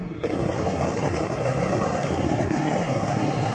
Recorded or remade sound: remade